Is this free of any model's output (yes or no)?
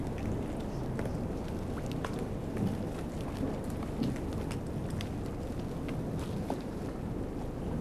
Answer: yes